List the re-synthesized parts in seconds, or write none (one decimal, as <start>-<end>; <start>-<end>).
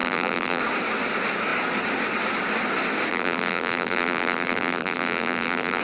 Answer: 0.0-0.6; 3.1-5.8